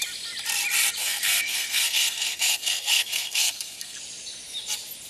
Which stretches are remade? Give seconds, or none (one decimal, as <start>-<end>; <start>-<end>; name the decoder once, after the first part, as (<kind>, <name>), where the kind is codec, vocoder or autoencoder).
1.0-4.0 (codec, SNAC)